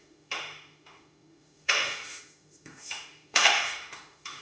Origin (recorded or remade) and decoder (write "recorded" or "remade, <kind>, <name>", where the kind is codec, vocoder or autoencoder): remade, autoencoder, DAC-VAE